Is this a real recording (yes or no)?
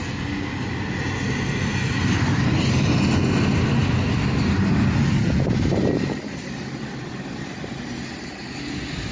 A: yes